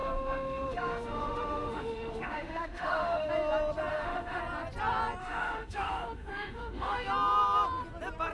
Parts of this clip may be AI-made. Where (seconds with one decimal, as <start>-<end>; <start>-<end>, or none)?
0.0-3.3; 3.9-4.4; 5.2-7.1